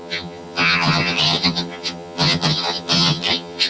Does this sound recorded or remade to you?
remade